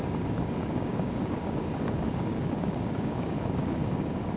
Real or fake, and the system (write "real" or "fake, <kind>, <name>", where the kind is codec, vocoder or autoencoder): fake, codec, DAC